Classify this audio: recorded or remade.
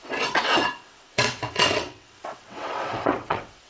remade